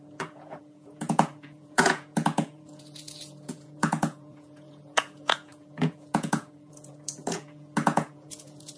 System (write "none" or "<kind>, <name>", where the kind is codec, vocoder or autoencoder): vocoder, Vocos